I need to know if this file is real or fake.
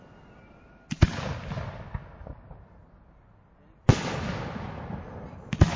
real